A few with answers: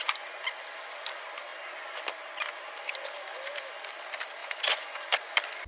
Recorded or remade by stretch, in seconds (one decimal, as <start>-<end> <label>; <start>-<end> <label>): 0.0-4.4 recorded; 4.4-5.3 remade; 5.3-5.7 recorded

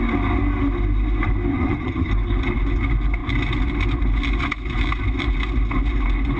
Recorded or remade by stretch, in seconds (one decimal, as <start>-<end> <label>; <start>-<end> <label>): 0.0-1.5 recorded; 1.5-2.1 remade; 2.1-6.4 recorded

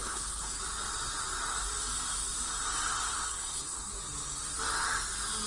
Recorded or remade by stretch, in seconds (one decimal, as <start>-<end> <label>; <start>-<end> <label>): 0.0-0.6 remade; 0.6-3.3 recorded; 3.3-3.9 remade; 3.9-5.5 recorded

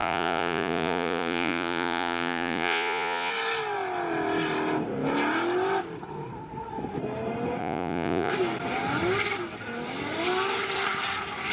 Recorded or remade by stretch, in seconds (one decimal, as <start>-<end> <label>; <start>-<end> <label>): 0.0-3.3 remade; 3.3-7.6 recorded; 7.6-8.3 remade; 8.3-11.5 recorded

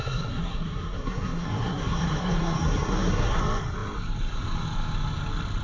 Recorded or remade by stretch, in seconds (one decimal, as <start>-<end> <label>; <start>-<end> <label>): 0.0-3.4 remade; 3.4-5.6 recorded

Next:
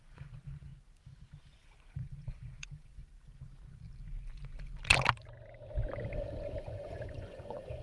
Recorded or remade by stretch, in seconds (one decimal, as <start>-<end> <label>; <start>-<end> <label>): 0.0-0.7 remade; 0.7-1.4 recorded; 1.4-3.0 remade; 3.0-6.6 recorded; 6.6-7.8 remade

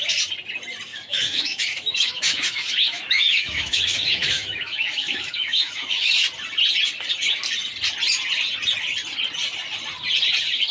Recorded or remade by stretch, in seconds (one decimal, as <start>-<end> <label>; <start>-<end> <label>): 0.0-0.9 recorded; 0.9-6.1 remade; 6.1-10.7 recorded